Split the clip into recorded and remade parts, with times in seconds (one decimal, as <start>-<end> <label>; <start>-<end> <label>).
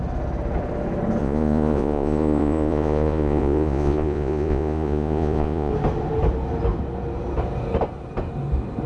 0.0-1.2 recorded; 1.2-5.7 remade; 5.7-8.9 recorded